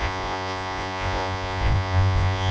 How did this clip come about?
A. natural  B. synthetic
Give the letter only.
B